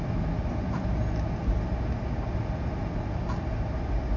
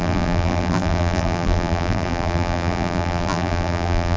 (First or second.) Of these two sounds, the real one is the first